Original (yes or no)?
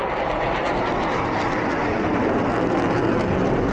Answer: yes